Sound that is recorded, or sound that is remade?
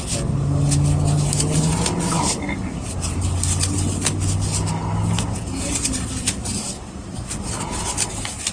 recorded